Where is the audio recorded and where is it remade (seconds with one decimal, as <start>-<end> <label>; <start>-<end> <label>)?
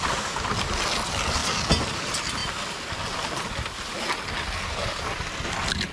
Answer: 0.0-5.9 recorded